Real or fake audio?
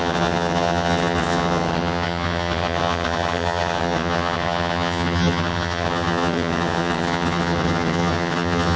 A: fake